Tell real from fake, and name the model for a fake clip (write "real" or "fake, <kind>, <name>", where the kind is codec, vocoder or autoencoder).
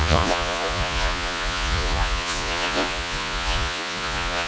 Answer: fake, vocoder, Vocos